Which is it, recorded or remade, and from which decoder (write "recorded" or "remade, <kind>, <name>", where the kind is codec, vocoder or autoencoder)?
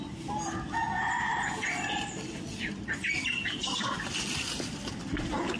recorded